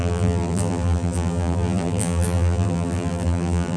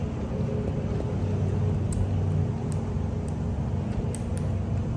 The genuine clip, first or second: second